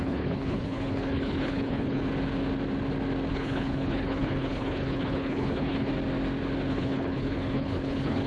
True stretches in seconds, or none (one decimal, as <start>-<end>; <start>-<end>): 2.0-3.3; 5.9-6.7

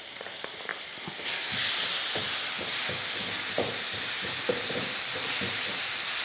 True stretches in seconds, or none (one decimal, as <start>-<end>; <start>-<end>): 0.7-1.7; 2.2-3.5

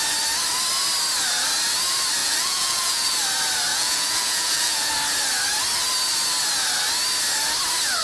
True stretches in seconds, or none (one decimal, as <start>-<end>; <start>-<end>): 0.0-2.2; 3.1-3.7; 4.9-8.0

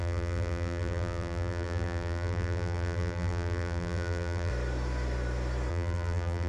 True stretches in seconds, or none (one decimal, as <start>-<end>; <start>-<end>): 4.5-5.7

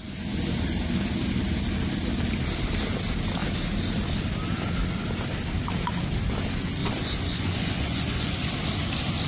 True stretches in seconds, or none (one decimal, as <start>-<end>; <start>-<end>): 0.0-6.8; 8.5-9.3